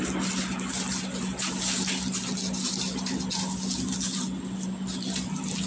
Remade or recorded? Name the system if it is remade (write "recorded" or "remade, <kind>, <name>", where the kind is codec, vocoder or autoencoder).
recorded